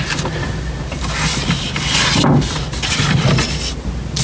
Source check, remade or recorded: recorded